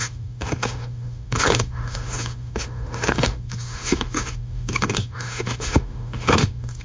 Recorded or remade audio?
remade